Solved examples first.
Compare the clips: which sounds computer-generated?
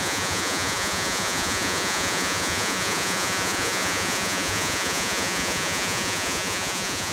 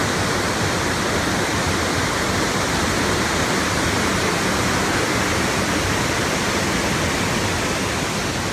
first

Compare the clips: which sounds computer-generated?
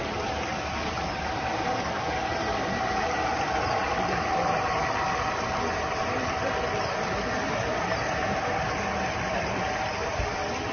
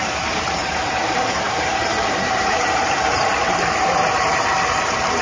second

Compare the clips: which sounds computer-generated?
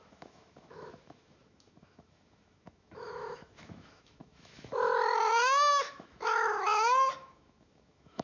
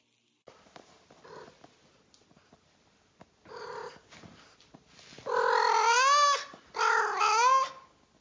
first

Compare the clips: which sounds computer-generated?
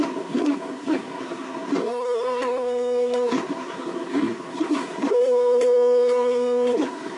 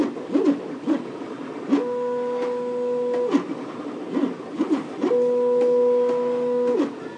first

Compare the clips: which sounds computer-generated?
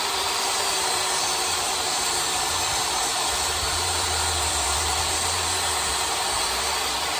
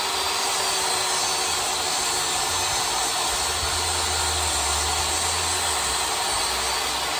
first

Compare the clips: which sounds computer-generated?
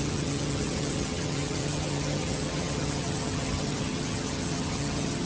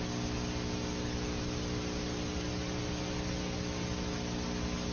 first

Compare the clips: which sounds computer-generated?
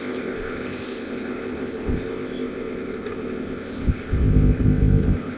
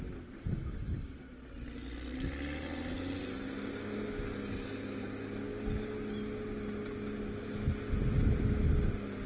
first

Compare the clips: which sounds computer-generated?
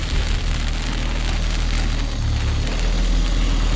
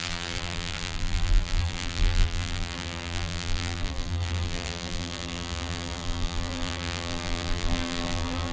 second